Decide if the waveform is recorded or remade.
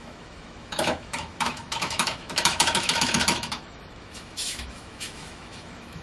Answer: remade